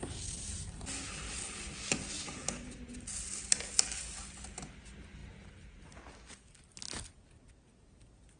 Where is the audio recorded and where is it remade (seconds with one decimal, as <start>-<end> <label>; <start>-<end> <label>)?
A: 0.0-8.4 recorded